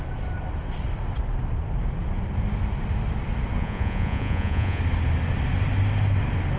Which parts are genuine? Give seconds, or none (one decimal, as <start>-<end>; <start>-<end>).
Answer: 0.0-3.6; 4.8-6.6